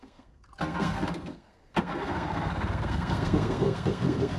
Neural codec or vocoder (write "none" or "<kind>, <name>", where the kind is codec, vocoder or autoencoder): codec, SNAC